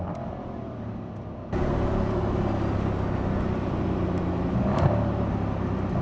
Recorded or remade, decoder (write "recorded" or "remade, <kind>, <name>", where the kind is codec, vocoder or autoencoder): recorded